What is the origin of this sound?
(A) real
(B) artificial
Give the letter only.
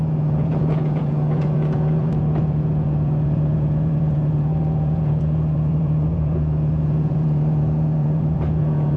B